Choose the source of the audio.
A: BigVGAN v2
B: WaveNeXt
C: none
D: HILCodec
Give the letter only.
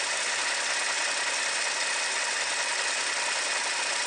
C